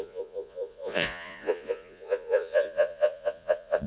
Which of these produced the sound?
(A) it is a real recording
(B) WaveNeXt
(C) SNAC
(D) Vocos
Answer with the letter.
D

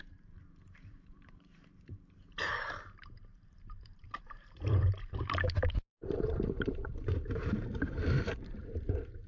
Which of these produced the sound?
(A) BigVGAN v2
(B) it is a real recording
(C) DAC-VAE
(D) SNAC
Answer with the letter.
A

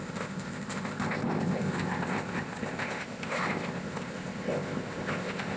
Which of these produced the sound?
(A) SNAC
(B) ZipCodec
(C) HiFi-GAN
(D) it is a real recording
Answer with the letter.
B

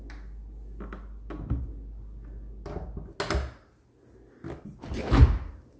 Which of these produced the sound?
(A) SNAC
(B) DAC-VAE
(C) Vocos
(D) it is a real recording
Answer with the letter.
D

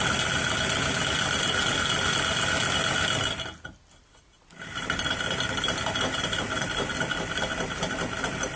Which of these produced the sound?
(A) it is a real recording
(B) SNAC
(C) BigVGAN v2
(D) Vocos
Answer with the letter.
A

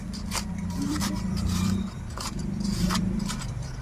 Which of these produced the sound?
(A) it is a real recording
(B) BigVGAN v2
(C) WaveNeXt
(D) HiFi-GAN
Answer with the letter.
B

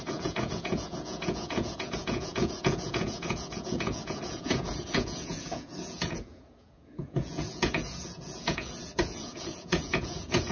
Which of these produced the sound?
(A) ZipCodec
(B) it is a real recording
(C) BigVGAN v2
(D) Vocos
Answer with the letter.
D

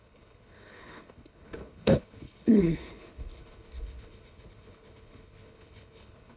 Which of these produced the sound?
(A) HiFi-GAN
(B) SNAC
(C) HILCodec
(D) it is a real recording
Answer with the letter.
C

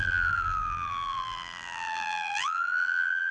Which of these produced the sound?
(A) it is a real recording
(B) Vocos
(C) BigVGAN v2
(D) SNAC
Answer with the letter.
C